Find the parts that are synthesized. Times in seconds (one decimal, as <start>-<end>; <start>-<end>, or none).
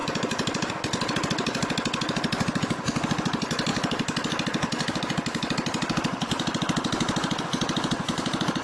0.0-0.7